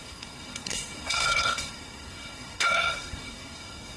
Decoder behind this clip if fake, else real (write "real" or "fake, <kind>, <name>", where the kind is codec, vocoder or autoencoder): fake, codec, SNAC